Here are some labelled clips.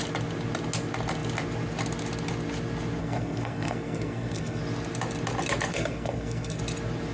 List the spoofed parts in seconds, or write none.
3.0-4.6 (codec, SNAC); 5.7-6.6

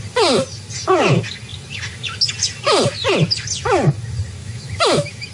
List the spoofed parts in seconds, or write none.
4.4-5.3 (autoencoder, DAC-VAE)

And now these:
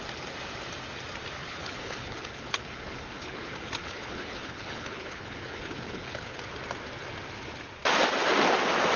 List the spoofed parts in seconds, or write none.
1.4-6.4 (codec, HILCodec)

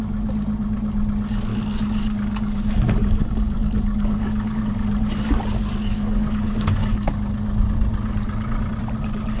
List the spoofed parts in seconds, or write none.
1.5-4.7 (codec, DAC); 5.8-7.3

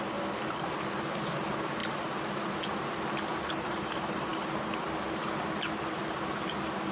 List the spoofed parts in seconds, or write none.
none

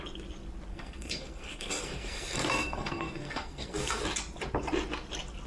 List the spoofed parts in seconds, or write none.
0.7-4.0 (codec, SNAC)

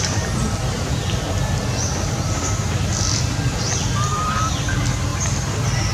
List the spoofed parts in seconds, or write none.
none

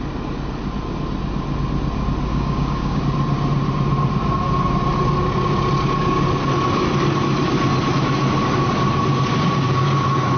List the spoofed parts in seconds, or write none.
2.3-3.0 (codec, DAC)